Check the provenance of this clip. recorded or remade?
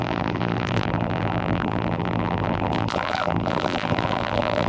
remade